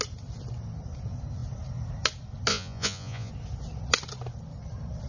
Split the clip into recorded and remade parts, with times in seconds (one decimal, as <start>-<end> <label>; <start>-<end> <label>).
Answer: 0.0-2.5 recorded; 2.5-3.3 remade; 3.3-5.1 recorded